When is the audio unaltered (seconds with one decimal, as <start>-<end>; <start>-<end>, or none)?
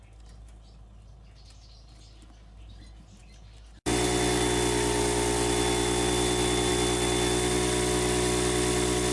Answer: 0.0-9.1